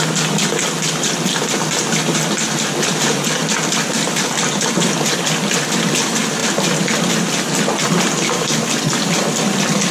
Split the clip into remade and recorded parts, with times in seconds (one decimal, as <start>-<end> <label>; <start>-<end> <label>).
0.0-9.9 recorded